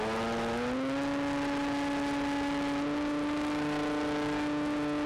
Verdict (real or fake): real